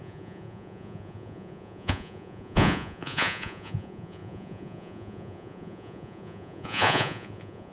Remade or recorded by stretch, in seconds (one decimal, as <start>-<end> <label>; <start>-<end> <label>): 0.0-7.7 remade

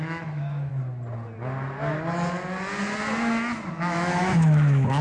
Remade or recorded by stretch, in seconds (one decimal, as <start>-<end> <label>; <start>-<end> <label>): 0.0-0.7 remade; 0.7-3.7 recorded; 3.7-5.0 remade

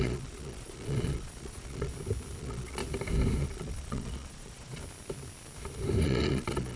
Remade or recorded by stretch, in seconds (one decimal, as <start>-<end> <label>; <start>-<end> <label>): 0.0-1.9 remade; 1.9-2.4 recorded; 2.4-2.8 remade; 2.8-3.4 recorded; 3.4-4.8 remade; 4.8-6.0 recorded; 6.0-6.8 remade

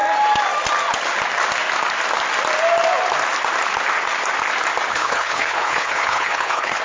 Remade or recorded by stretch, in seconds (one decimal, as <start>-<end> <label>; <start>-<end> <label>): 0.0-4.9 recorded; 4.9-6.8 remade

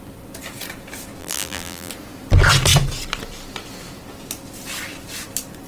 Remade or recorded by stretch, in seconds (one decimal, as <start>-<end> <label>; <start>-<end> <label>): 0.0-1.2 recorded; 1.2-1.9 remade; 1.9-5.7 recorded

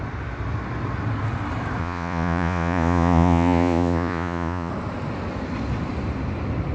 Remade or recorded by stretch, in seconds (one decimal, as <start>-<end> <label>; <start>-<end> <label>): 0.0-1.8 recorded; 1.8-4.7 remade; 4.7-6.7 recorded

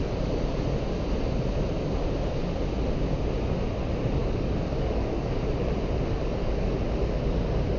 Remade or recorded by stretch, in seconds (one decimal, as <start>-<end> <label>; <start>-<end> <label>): 0.0-4.2 recorded; 4.2-5.7 remade; 5.7-6.2 recorded; 6.2-6.7 remade; 6.7-7.8 recorded